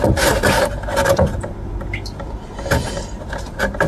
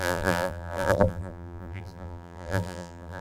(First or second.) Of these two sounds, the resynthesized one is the second